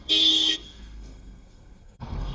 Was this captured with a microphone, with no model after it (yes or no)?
no